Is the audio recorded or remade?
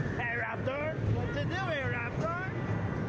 recorded